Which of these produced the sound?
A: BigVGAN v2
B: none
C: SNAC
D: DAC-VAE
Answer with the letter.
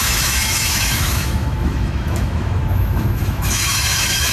D